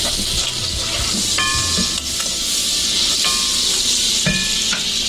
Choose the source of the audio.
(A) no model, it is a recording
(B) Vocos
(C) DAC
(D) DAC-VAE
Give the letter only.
A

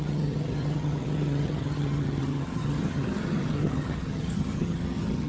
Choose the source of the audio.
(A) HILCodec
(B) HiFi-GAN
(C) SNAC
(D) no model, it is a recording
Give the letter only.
B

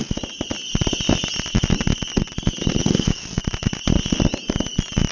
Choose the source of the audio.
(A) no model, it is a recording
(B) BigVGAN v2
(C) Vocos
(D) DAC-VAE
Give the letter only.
A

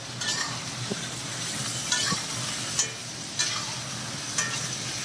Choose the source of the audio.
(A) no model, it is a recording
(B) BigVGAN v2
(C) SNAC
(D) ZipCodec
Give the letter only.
A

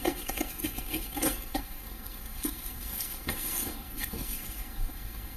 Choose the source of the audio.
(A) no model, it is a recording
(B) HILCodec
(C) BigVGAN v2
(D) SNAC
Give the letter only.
D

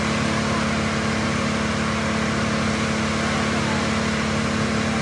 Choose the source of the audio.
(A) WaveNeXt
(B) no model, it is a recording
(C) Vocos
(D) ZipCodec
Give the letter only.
B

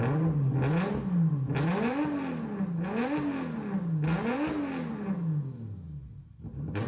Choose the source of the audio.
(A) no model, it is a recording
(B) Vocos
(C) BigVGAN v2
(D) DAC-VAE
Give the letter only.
A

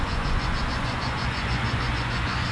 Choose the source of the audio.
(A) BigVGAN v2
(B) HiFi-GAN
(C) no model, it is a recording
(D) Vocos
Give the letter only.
D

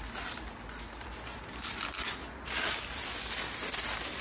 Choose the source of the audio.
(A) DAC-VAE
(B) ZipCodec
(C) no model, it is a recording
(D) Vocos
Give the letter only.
C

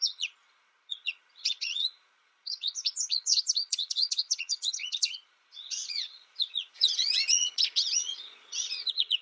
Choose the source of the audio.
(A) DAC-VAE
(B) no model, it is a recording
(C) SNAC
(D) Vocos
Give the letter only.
D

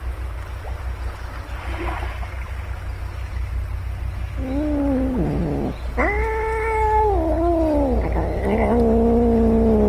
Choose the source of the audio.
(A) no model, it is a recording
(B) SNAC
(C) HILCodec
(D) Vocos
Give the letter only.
A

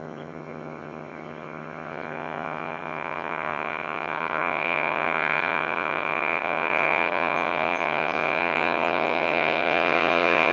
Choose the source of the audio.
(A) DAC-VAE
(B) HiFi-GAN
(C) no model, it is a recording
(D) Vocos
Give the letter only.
B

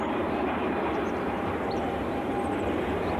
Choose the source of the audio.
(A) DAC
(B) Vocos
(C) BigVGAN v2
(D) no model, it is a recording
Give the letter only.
C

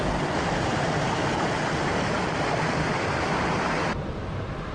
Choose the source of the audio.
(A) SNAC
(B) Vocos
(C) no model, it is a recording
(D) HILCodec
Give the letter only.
C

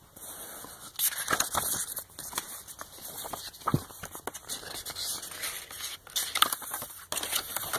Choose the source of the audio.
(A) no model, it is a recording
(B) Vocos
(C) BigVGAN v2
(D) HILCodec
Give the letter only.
A